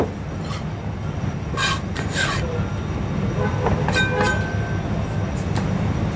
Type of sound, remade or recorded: recorded